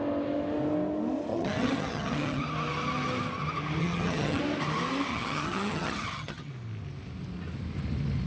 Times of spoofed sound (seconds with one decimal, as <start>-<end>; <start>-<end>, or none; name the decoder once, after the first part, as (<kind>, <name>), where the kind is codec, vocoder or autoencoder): 1.3-2.4 (vocoder, HiFi-GAN); 3.8-4.4; 5.1-6.5